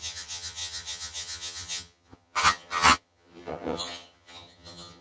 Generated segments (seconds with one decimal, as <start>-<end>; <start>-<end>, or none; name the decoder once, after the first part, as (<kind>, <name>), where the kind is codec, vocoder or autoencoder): 0.0-5.0 (vocoder, HiFi-GAN)